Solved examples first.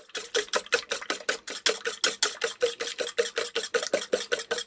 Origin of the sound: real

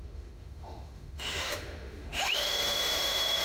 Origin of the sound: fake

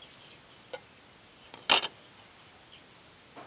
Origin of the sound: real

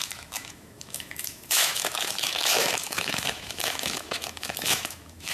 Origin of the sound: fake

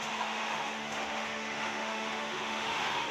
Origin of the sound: fake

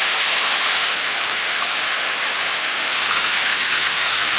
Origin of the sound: fake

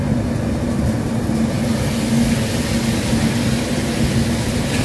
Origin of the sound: real